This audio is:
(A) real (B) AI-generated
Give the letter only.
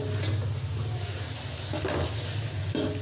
A